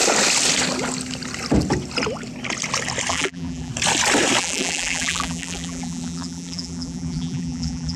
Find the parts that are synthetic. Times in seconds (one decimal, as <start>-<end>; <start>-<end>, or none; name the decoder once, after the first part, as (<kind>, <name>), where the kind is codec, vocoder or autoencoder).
3.1-3.7 (vocoder, BigVGAN v2); 4.4-8.0